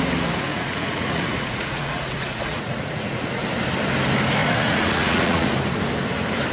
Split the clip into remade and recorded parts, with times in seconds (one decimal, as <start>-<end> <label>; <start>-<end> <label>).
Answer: 0.0-0.5 recorded; 0.5-3.4 remade; 3.4-4.4 recorded; 4.4-5.5 remade; 5.5-6.5 recorded